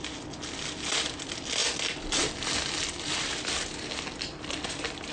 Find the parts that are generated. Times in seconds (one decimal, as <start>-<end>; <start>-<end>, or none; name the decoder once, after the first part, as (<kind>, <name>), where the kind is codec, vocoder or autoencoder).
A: none